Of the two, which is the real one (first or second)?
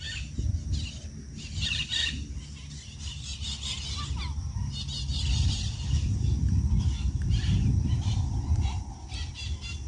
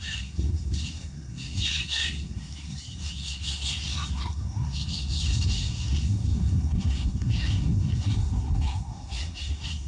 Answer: first